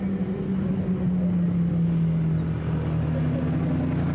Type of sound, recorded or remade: recorded